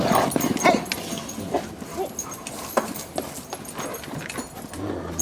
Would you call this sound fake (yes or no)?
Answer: no